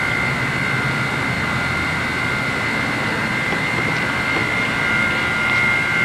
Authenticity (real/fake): real